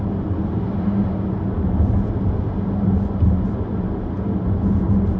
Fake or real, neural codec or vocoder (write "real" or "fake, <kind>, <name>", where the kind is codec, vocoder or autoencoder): real